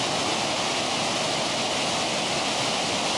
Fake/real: real